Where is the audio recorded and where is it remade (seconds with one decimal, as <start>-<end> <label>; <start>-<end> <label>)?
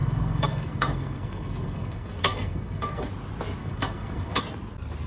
0.0-3.1 remade; 3.1-3.6 recorded; 3.6-4.4 remade; 4.4-5.1 recorded